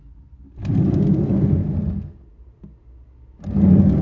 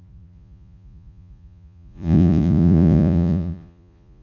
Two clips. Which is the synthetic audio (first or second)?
second